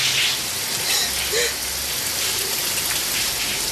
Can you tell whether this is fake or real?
real